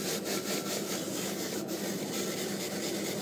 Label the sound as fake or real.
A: real